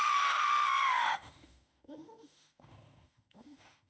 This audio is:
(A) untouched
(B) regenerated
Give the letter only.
B